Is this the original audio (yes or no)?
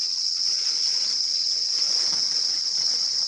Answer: no